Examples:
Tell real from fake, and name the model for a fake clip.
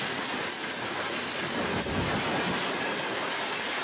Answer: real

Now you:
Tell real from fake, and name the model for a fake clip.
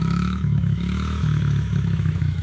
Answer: fake, autoencoder, DAC-VAE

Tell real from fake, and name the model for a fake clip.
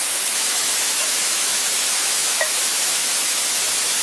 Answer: fake, autoencoder, DAC-VAE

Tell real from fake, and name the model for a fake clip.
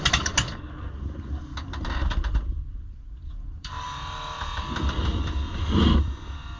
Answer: real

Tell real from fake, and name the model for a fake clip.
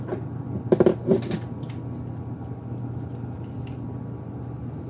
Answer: real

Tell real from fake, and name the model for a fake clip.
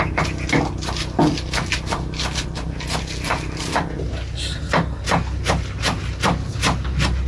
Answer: real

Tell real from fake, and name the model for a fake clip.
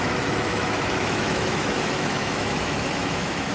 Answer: fake, autoencoder, DAC-VAE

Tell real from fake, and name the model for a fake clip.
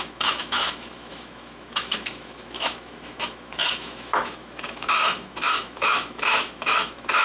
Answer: fake, autoencoder, DAC-VAE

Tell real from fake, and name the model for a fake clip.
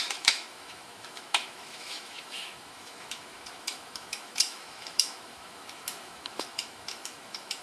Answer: fake, autoencoder, DAC-VAE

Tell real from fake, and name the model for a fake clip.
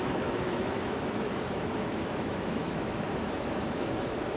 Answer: fake, autoencoder, DAC-VAE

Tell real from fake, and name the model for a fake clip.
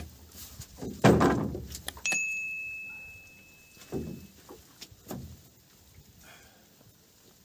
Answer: real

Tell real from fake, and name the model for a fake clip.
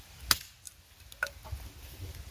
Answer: real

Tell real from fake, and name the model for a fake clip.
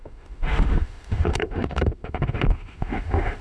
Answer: fake, autoencoder, DAC-VAE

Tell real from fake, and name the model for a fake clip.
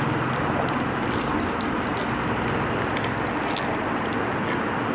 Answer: real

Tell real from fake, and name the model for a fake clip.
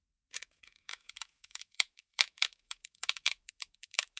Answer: fake, autoencoder, DAC-VAE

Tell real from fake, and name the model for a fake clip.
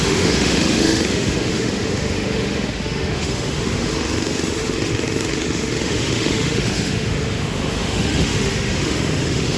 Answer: fake, autoencoder, DAC-VAE